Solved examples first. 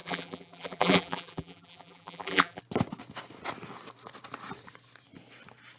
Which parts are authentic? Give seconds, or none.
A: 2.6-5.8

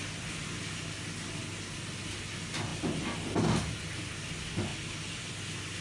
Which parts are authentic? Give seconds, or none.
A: 0.0-5.8

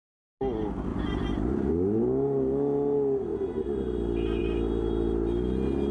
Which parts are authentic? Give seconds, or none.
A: 0.0-0.9; 1.7-5.9

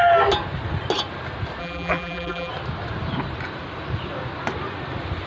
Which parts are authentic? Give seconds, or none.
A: 0.0-1.6; 2.5-5.3

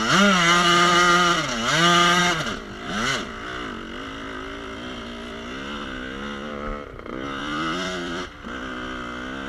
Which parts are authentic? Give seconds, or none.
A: 0.0-7.4; 8.7-9.5

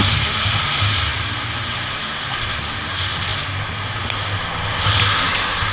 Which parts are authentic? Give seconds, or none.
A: 0.0-5.7